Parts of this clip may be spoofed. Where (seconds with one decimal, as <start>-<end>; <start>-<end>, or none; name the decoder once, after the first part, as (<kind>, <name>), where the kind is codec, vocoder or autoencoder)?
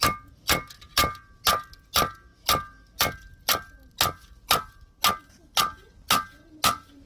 none